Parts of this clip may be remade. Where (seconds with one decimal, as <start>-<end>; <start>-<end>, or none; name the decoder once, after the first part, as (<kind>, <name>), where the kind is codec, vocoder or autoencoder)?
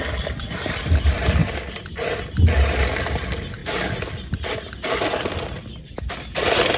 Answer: 0.0-1.4 (vocoder, BigVGAN v2); 3.1-6.8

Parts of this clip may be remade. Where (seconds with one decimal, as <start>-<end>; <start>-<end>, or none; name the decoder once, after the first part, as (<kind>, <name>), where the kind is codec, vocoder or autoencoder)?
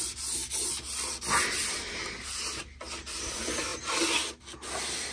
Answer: none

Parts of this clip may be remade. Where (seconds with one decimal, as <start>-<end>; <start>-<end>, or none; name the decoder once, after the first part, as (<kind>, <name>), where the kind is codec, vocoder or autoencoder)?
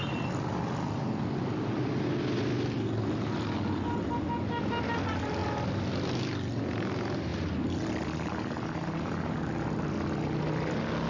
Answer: none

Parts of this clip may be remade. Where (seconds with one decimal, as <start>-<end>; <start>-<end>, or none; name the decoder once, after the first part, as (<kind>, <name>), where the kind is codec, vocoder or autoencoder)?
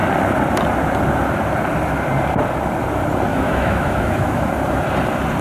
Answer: 3.3-4.5 (autoencoder, DAC-VAE)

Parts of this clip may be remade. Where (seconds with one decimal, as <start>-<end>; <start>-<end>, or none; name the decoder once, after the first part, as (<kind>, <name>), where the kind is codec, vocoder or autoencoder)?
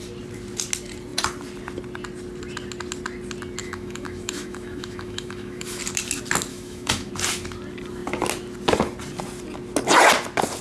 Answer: 3.6-5.8 (autoencoder, DAC-VAE); 6.5-7.1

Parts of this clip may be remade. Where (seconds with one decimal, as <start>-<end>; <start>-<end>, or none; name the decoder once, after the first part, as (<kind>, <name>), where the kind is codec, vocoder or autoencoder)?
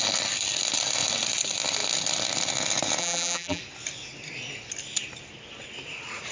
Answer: 3.0-3.6 (vocoder, BigVGAN v2)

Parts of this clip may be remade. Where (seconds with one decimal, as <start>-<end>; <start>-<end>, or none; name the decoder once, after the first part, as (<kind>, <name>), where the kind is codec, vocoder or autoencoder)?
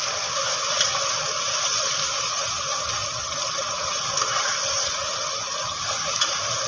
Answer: none